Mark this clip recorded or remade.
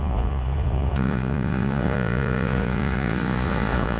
remade